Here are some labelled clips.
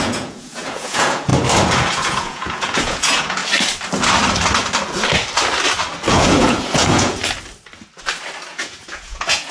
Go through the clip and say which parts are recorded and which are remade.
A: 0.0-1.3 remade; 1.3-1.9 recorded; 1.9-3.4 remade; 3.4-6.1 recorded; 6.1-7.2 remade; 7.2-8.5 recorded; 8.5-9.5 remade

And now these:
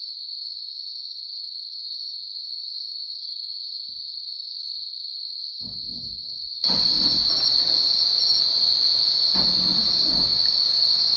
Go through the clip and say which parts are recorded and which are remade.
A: 0.0-11.2 recorded